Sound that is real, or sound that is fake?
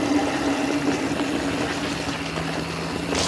real